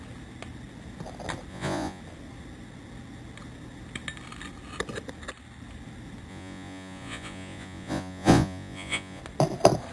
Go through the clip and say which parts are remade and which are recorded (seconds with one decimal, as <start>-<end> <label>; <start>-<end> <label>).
0.0-1.5 recorded; 1.5-2.0 remade; 2.0-6.3 recorded; 6.3-9.2 remade; 9.2-9.9 recorded